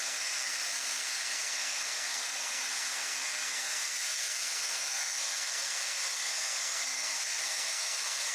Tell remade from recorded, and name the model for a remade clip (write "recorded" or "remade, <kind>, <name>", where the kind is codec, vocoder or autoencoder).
remade, codec, SNAC